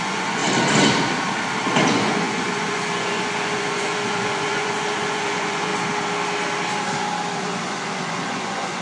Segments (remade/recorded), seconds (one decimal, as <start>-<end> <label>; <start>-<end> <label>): 0.0-0.4 remade; 0.4-1.9 recorded; 1.9-5.7 remade; 5.7-7.4 recorded; 7.4-8.8 remade